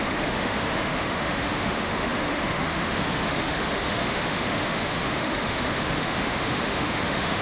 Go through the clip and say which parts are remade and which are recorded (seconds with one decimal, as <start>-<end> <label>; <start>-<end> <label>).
0.0-7.4 remade